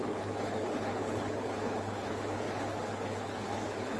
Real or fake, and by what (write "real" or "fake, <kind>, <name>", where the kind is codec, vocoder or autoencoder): fake, codec, HILCodec